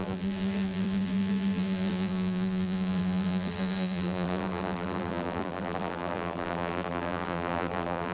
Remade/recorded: remade